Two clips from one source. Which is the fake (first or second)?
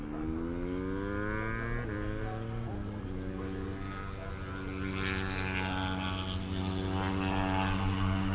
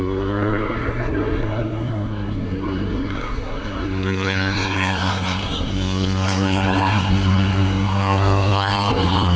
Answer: second